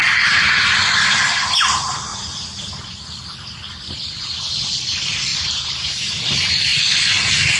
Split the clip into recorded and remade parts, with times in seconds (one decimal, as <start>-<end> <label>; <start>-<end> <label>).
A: 0.0-5.3 recorded; 5.3-6.2 remade; 6.2-7.6 recorded